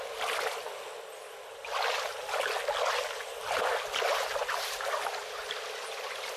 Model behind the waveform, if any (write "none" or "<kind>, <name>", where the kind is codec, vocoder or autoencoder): none